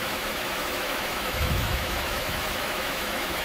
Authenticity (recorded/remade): remade